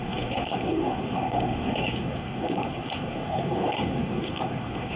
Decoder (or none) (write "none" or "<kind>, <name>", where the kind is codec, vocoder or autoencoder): codec, SNAC